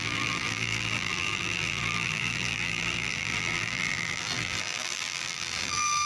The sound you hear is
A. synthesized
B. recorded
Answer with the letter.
A